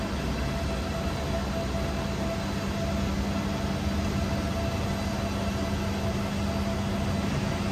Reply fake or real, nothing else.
real